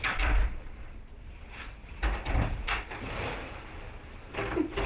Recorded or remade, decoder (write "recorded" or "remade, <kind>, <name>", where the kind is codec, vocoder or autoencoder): remade, vocoder, BigVGAN v2